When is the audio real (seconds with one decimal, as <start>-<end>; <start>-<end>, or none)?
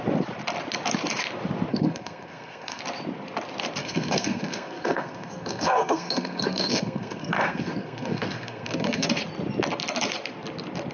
0.0-1.7; 2.8-3.8; 9.1-10.9